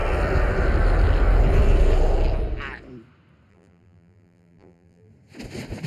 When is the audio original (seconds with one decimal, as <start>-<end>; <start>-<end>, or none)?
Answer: 0.0-3.5; 5.1-5.9

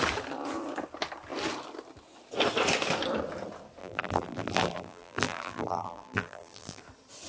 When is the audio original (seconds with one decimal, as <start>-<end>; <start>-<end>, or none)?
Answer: 0.0-3.8; 6.8-7.3

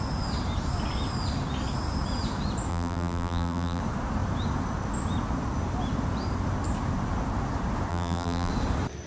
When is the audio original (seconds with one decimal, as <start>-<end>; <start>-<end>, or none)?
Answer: 0.0-2.7; 3.8-7.9; 8.5-9.1

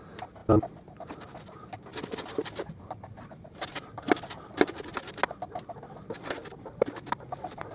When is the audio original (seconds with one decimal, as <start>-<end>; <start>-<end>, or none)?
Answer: 0.0-1.9; 5.0-6.4

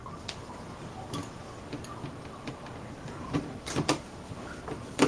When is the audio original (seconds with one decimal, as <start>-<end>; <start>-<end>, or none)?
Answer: 0.0-5.1

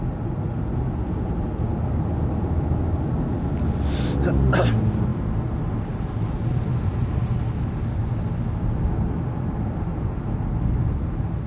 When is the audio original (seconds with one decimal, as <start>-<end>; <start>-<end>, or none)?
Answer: 0.0-11.5

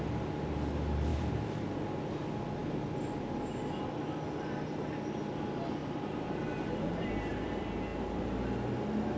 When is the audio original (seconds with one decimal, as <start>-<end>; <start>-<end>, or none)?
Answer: 0.0-1.1; 1.8-5.8; 7.1-9.2

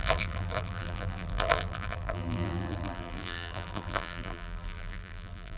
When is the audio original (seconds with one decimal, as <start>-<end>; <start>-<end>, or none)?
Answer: none